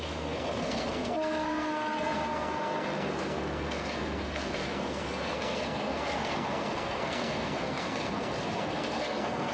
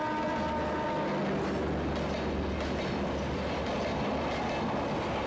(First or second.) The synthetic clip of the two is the first